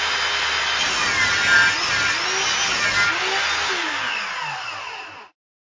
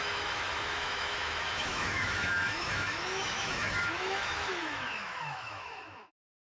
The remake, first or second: second